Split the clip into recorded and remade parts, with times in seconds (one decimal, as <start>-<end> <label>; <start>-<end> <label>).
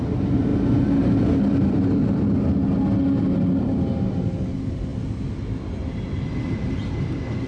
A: 0.0-7.5 recorded